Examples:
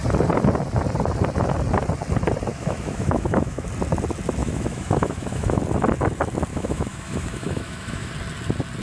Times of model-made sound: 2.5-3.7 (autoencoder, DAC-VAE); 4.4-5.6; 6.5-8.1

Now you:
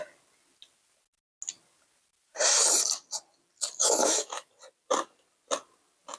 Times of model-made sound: 3.8-4.5 (autoencoder, DAC-VAE)

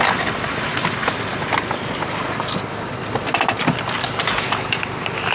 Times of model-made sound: none